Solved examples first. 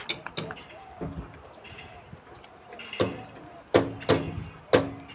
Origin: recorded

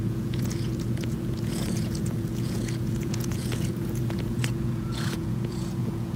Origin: remade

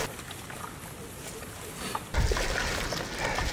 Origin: recorded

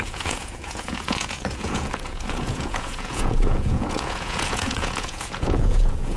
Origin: remade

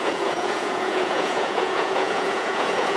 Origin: remade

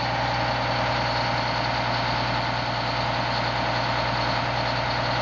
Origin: recorded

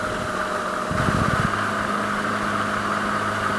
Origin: recorded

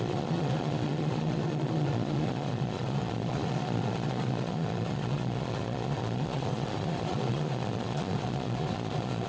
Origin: remade